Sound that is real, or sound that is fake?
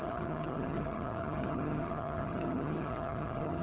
fake